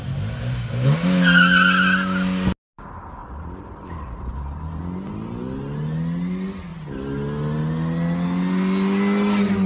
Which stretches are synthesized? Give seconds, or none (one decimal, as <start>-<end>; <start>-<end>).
3.2-4.8